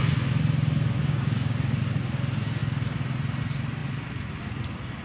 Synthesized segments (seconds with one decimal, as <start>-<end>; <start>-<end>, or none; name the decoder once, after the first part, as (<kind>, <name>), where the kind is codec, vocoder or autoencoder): 1.0-1.8 (codec, DAC)